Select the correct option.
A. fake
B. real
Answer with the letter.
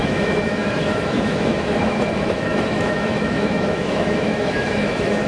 A